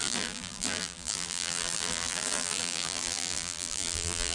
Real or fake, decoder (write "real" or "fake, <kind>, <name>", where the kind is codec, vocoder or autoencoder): fake, vocoder, BigVGAN v2